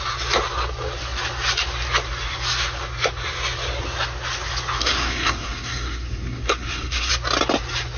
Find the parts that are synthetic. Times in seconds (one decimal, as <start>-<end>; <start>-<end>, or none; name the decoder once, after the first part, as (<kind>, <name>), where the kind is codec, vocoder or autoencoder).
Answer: 4.8-7.1 (codec, SNAC)